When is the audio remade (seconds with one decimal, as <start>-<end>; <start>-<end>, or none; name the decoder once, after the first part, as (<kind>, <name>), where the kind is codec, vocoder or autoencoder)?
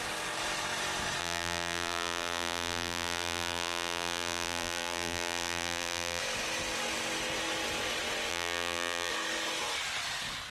1.2-6.2 (vocoder, BigVGAN v2); 8.3-9.1